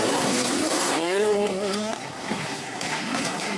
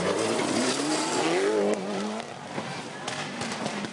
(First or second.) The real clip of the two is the second